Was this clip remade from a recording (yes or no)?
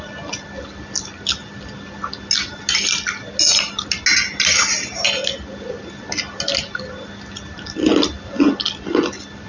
no